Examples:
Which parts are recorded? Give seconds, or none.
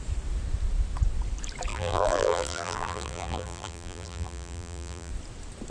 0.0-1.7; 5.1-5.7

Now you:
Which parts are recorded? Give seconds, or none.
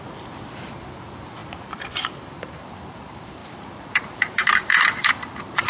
none